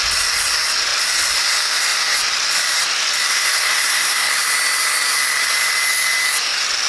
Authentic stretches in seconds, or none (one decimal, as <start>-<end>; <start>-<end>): 0.0-3.3; 4.3-6.9